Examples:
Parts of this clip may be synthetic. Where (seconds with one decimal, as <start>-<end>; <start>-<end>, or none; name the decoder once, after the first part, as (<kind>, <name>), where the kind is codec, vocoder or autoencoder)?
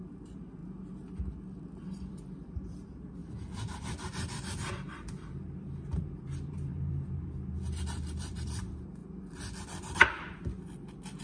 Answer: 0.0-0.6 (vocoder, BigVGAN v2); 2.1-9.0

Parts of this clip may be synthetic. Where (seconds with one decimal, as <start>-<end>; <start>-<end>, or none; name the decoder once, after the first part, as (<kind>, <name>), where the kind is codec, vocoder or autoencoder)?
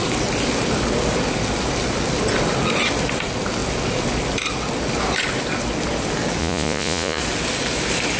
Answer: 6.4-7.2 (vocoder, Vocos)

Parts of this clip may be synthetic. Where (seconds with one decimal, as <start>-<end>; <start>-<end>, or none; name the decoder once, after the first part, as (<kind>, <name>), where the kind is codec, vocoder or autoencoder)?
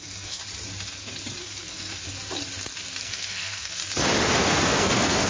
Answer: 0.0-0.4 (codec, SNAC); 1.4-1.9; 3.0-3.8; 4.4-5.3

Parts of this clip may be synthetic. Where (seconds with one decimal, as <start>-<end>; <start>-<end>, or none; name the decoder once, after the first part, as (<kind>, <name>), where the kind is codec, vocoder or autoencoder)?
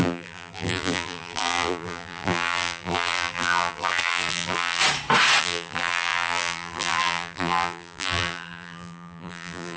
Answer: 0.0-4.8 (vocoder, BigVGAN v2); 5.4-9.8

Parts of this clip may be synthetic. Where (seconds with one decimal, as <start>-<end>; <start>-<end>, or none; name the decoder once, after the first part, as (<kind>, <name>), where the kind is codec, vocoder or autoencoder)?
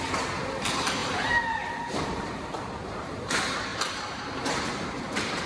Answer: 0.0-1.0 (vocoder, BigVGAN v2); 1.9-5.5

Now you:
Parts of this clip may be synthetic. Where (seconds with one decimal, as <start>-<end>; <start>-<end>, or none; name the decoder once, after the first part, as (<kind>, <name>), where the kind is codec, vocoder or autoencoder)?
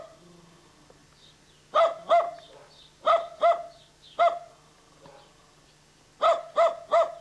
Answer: none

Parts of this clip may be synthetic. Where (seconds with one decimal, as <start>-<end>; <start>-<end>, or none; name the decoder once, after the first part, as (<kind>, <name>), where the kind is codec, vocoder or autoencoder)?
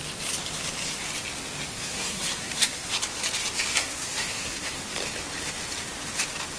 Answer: 1.7-2.9 (codec, SNAC); 3.7-4.8